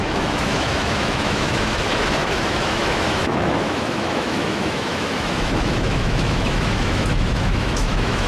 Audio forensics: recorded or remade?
remade